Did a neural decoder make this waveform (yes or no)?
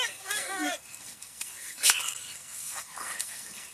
yes